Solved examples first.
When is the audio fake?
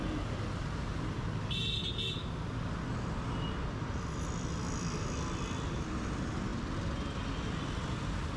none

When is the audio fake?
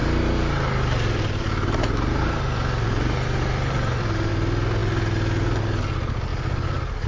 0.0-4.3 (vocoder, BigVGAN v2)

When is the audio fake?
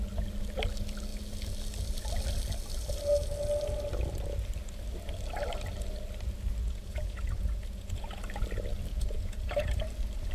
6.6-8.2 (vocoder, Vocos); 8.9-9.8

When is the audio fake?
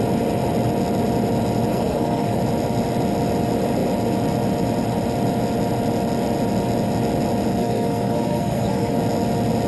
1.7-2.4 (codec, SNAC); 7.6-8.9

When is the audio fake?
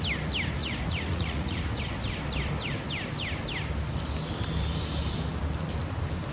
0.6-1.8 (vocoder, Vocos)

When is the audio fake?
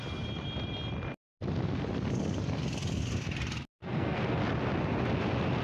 3.8-4.4 (codec, SNAC)